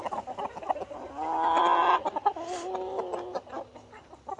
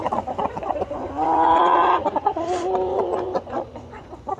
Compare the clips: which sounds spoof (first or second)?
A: second